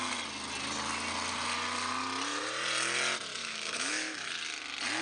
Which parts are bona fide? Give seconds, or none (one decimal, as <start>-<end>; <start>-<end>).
0.0-3.4; 4.3-5.0